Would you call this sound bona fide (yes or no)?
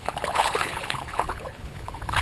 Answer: no